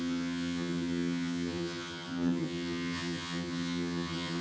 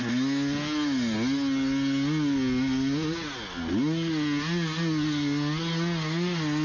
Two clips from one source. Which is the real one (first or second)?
second